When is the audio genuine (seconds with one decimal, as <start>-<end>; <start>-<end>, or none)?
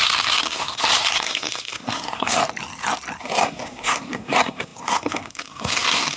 2.4-3.2